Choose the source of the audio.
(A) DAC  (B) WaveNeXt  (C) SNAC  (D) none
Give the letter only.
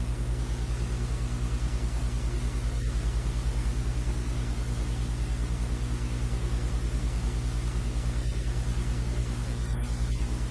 C